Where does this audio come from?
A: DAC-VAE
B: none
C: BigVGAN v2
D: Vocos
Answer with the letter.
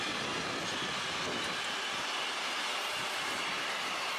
B